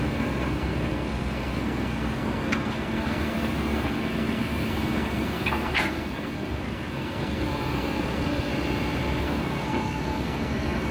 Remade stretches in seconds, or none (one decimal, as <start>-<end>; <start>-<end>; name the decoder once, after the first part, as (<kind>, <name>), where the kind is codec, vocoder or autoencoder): 0.0-8.5 (codec, SNAC); 9.2-10.9